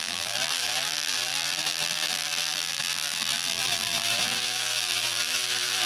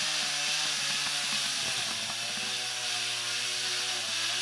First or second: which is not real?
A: first